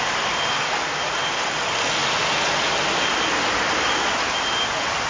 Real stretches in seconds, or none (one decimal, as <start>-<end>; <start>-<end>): 0.0-5.1

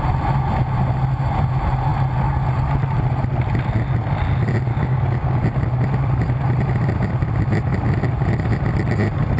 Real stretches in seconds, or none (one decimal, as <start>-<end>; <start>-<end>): 0.0-4.7; 5.4-9.4

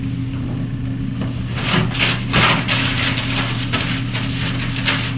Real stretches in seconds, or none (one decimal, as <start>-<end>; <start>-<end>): 0.0-5.2

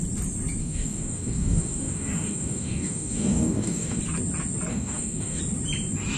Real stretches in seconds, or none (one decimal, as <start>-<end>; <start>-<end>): 0.0-0.6; 4.0-4.7; 5.4-6.2

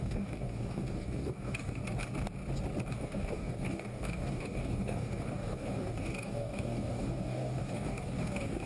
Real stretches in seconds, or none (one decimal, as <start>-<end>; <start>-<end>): 1.8-2.9

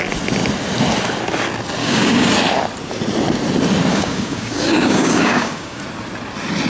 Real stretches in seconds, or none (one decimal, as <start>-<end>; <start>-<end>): 0.0-1.8; 2.3-3.9; 5.8-6.7

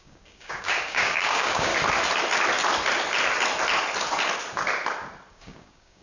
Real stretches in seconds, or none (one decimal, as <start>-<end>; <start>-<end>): 1.7-5.3